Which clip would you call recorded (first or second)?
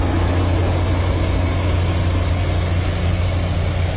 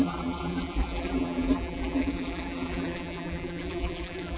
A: first